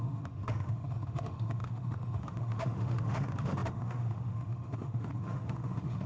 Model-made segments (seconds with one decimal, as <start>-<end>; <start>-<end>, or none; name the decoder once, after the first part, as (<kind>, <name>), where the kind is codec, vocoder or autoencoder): 0.0-6.1 (autoencoder, DAC-VAE)